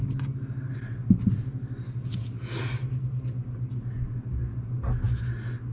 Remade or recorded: recorded